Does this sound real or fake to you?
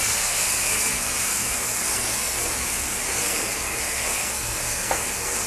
fake